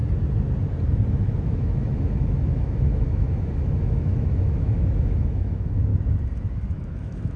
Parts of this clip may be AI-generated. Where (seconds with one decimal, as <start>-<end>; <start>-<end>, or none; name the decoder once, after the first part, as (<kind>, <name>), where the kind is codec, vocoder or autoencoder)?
1.1-5.9 (autoencoder, DAC-VAE); 6.8-7.4